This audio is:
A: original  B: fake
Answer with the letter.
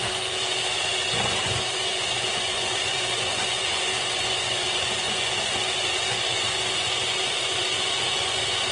B